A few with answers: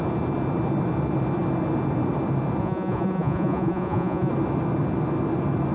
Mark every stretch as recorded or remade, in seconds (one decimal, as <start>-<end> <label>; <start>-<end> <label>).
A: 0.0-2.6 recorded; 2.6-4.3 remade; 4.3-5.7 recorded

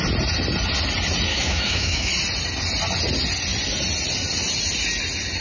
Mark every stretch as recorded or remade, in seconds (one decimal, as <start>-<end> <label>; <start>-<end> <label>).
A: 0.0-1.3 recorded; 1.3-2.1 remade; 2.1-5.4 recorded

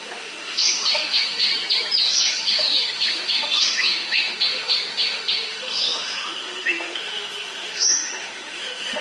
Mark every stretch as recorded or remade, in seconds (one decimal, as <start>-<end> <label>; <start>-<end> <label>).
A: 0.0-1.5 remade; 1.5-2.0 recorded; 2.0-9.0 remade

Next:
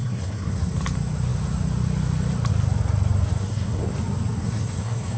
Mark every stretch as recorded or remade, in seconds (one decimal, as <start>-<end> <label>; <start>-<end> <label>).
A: 0.0-0.7 remade; 0.7-3.3 recorded; 3.3-3.8 remade; 3.8-4.4 recorded; 4.4-5.2 remade

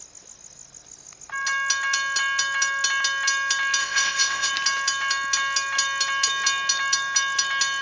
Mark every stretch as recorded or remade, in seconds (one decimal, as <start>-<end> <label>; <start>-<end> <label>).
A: 0.0-3.8 recorded; 3.8-4.5 remade; 4.5-7.8 recorded

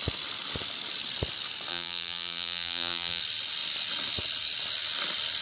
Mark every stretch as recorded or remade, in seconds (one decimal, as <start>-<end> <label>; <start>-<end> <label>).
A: 0.0-1.7 recorded; 1.7-3.2 remade; 3.2-5.4 recorded